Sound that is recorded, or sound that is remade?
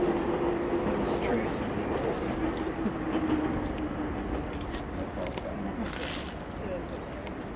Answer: recorded